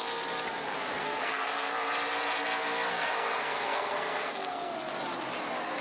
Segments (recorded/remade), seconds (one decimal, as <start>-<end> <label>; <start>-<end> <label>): 0.0-1.0 recorded; 1.0-1.7 remade; 1.7-2.9 recorded; 2.9-4.7 remade; 4.7-5.8 recorded